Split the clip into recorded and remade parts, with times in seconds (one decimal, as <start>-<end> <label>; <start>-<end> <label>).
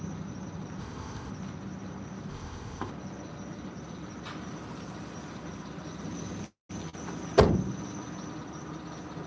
0.0-0.8 recorded; 0.8-1.3 remade; 1.3-2.3 recorded; 2.3-2.9 remade; 2.9-9.3 recorded